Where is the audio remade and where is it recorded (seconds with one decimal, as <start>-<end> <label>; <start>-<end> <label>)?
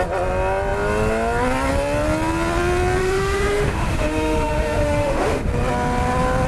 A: 0.0-3.0 recorded; 3.0-5.5 remade; 5.5-6.5 recorded